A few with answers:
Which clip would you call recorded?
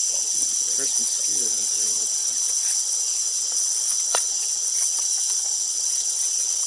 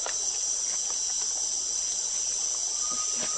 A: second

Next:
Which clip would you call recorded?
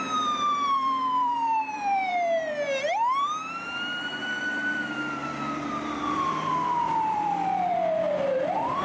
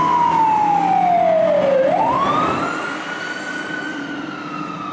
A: second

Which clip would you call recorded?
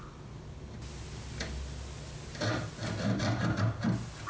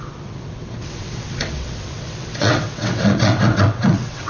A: first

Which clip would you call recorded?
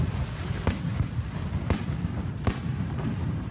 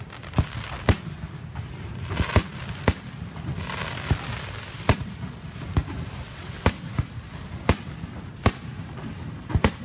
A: second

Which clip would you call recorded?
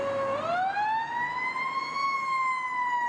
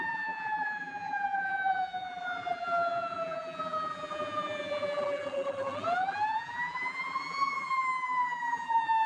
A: first